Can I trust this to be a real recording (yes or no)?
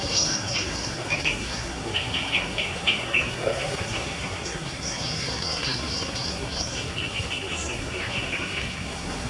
no